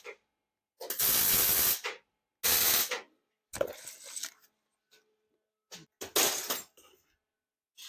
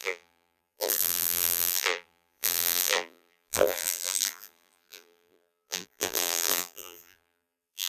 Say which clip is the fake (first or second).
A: second